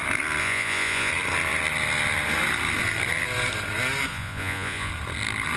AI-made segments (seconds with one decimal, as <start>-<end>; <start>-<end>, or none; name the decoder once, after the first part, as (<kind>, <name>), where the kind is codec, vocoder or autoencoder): 0.4-1.1 (vocoder, Vocos); 4.1-4.9